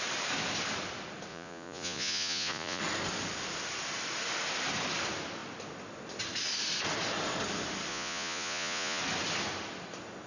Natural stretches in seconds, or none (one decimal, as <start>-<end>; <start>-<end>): 0.0-1.3; 2.8-7.9; 9.0-10.3